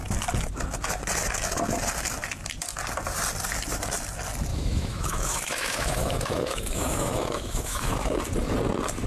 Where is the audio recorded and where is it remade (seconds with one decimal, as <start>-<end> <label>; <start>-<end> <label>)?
0.0-4.5 recorded; 4.5-8.2 remade; 8.2-9.1 recorded